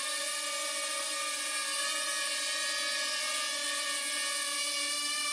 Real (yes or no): yes